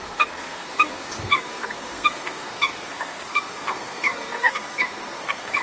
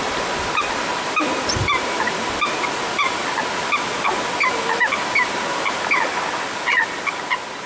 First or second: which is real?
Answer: second